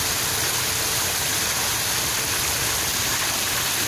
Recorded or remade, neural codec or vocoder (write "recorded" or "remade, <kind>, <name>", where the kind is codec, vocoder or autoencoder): recorded